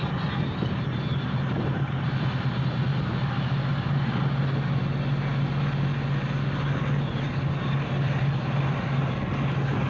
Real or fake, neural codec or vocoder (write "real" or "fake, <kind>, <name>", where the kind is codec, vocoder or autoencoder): real